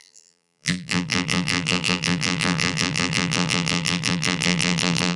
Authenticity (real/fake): fake